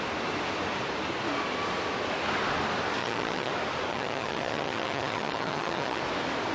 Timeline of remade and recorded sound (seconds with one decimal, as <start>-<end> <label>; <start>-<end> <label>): 0.0-3.0 recorded; 3.0-3.5 remade; 3.5-3.9 recorded; 3.9-6.0 remade; 6.0-6.5 recorded